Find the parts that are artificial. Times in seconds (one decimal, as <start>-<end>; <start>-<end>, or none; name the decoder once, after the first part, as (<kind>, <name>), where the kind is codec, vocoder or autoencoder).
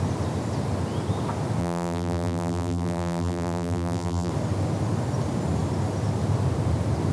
1.6-4.3 (vocoder, BigVGAN v2)